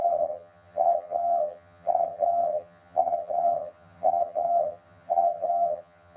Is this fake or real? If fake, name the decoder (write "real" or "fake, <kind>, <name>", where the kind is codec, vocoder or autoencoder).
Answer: fake, vocoder, HiFi-GAN